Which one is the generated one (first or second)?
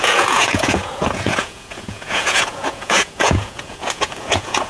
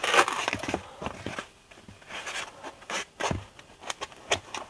first